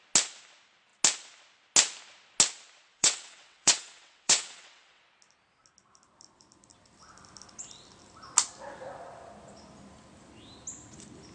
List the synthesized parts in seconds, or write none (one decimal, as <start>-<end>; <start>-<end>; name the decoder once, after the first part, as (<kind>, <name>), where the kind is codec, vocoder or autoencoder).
2.9-5.0 (vocoder, WaveNeXt)